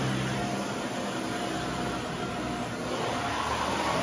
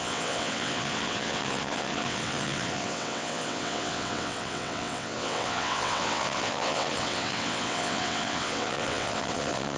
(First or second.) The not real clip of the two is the second